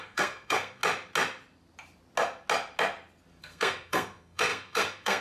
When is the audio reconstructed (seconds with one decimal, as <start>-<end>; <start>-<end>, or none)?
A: 0.0-0.8; 3.4-5.2